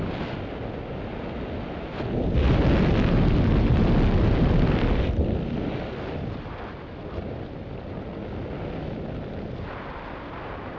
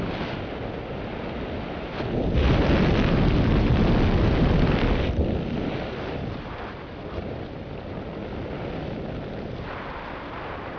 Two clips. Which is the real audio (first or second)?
first